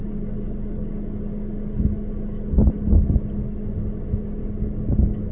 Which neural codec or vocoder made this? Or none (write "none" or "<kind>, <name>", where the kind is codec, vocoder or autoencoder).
none